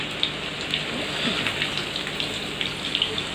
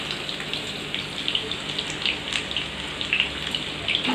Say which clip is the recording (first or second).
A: second